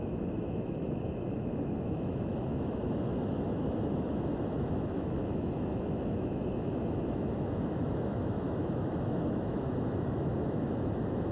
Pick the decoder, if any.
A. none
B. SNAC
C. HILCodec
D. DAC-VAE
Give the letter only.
D